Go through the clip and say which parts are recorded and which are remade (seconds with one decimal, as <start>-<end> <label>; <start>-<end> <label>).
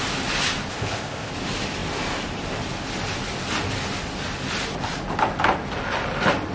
0.0-0.7 recorded; 0.7-1.3 remade; 1.3-6.5 recorded